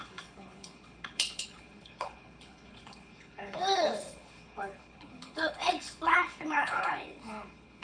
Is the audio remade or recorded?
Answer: remade